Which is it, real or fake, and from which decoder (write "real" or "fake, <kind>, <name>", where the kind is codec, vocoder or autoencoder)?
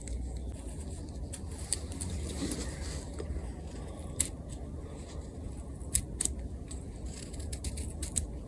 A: real